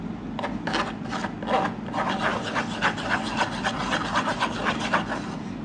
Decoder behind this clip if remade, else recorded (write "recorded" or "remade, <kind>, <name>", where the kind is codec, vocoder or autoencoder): recorded